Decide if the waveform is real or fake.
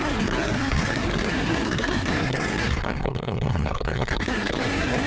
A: fake